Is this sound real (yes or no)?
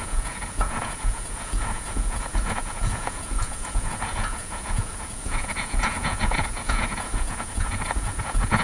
no